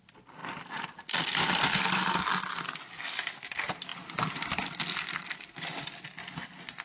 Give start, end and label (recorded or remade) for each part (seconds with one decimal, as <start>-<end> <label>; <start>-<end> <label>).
0.0-6.8 recorded